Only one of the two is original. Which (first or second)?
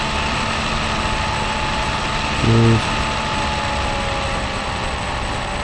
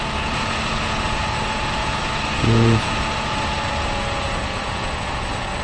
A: first